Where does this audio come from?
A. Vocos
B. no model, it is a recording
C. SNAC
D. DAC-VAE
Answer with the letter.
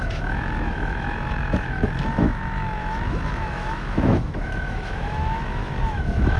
D